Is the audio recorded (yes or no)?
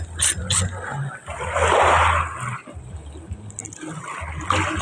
yes